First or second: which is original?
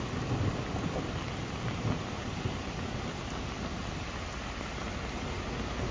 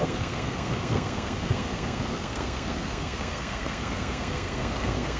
first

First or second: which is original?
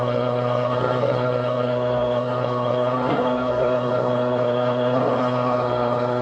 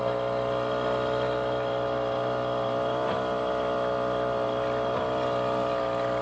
second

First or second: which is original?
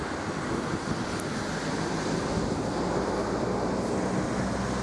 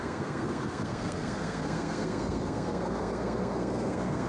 first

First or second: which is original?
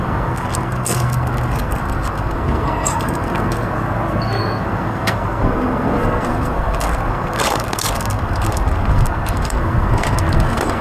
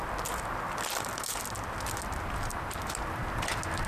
second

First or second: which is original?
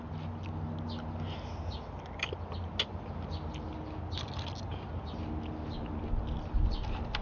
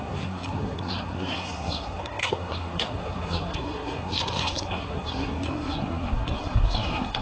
first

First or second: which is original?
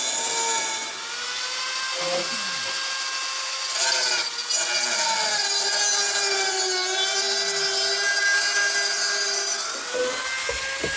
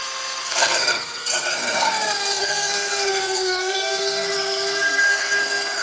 first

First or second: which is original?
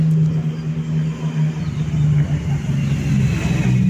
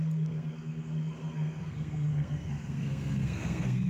first